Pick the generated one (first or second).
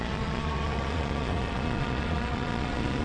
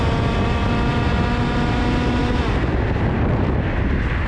first